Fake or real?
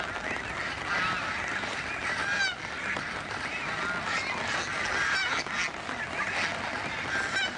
real